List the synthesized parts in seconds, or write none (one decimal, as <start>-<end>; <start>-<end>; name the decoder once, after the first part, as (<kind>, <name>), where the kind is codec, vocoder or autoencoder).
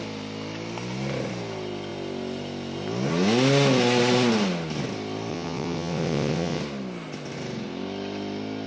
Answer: 5.3-6.6 (vocoder, WaveNeXt)